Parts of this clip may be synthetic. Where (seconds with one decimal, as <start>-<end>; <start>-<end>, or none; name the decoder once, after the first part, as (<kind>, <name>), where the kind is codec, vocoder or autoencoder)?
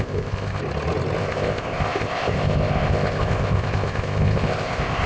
0.0-0.6 (codec, ZipCodec); 1.2-5.1